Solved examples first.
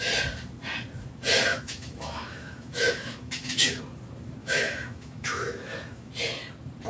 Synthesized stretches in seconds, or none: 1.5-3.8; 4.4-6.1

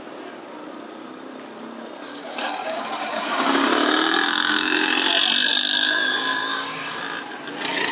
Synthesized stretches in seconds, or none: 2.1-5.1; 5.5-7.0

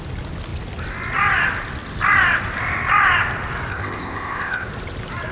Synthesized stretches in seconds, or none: 3.7-4.7

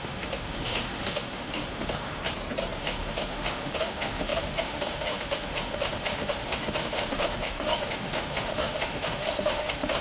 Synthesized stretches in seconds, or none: 0.0-2.2; 2.8-10.0

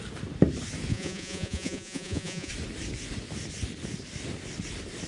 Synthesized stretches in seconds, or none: 0.9-2.5

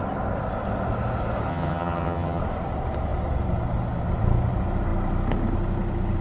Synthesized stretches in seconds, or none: 1.5-2.4

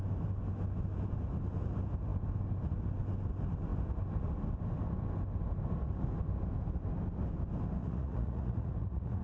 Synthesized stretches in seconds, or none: 7.8-9.2

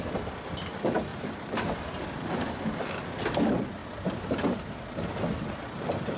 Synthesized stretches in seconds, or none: 1.1-1.7